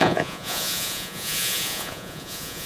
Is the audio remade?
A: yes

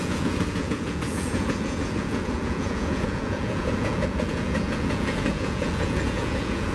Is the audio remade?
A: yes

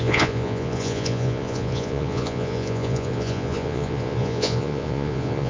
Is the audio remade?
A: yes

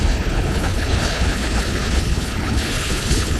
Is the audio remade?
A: yes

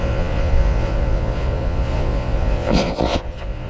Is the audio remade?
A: yes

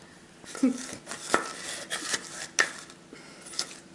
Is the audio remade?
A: no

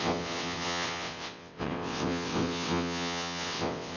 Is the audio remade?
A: yes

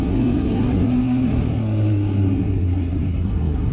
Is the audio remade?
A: yes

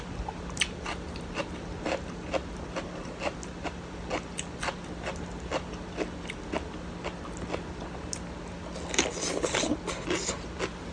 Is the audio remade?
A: no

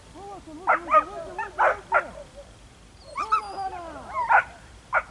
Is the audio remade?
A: no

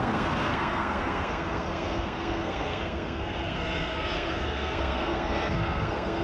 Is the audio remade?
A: yes